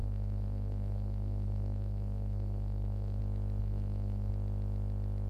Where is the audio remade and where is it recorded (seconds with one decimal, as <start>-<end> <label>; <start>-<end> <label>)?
0.0-3.2 remade; 3.2-3.6 recorded; 3.6-4.3 remade; 4.3-5.3 recorded